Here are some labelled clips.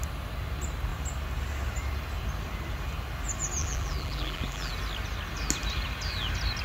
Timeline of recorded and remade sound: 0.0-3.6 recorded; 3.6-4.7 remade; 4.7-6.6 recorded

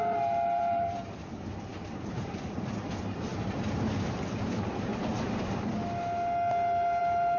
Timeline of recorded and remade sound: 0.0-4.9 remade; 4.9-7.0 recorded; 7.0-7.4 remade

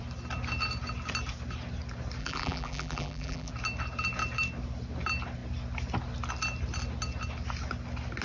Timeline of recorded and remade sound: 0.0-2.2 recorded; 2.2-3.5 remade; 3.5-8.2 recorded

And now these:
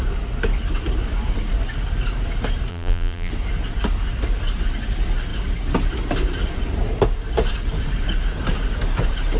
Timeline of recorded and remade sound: 0.0-2.7 recorded; 2.7-3.3 remade; 3.3-9.4 recorded

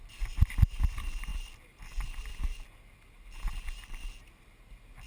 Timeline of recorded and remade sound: 0.0-5.1 recorded

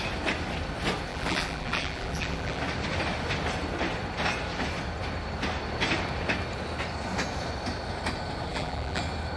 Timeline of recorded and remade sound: 0.0-1.1 recorded; 1.1-2.6 remade; 2.6-8.5 recorded; 8.5-9.0 remade; 9.0-9.4 recorded